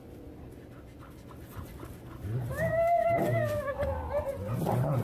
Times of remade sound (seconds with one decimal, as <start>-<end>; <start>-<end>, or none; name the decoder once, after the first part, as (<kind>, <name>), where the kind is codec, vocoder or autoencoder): 2.5-4.1 (codec, DAC)